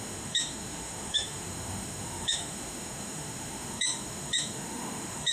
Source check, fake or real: fake